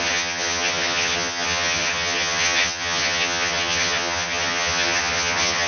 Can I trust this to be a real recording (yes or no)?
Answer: no